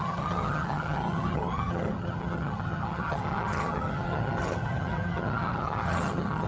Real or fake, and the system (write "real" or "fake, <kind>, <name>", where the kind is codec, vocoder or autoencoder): fake, vocoder, HiFi-GAN